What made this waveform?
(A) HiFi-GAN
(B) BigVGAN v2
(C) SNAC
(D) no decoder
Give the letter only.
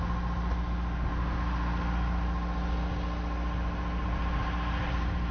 D